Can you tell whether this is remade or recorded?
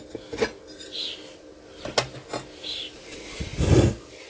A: recorded